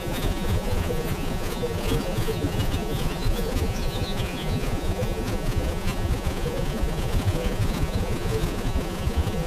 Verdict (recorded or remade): remade